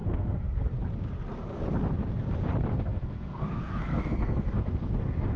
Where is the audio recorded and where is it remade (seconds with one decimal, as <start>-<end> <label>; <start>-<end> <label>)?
0.0-0.7 remade; 0.7-2.7 recorded; 2.7-5.4 remade